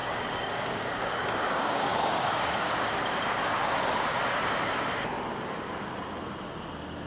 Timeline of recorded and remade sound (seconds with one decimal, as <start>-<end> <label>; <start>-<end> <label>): 0.0-2.8 remade; 2.8-7.1 recorded